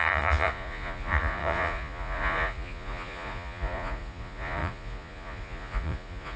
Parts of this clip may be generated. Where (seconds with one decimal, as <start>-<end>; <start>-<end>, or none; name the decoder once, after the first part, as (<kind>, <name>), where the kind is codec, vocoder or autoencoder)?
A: 0.0-6.4 (vocoder, Vocos)